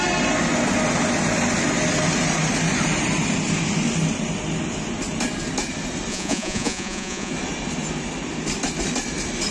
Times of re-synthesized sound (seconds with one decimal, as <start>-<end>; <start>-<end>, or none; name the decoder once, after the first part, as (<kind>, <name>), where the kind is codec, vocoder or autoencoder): 6.1-7.3 (vocoder, Vocos)